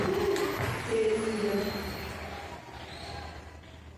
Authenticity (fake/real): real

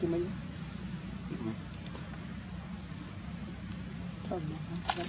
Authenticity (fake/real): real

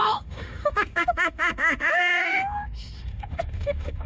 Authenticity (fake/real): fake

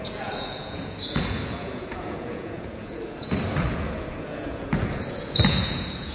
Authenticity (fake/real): fake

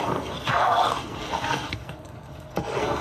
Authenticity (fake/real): fake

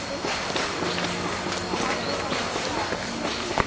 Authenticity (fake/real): real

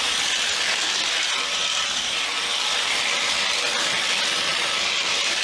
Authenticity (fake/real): real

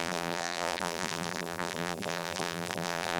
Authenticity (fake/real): fake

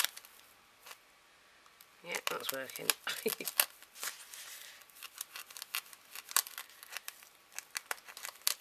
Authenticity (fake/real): real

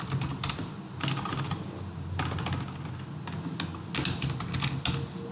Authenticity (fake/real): real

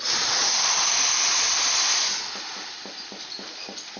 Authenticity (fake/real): real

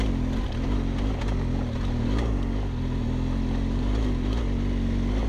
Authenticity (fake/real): real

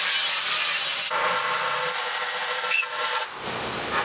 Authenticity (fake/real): real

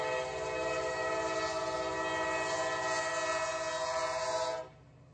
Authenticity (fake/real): real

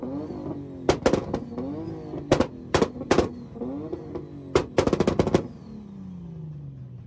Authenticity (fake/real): real